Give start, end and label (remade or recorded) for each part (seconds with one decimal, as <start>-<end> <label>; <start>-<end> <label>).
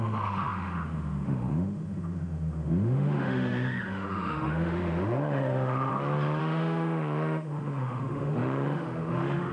0.0-5.9 remade; 5.9-6.4 recorded; 6.4-9.5 remade